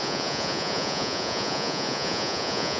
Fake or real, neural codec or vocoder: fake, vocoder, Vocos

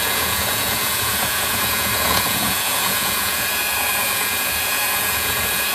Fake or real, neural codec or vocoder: fake, vocoder, Vocos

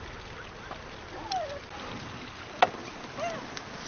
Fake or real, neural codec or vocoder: real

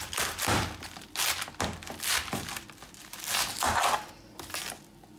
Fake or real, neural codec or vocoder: real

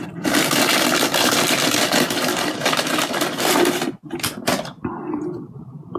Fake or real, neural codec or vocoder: fake, vocoder, BigVGAN v2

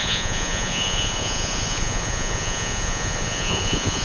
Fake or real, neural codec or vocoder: fake, vocoder, Vocos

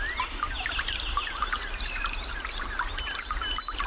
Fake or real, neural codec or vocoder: real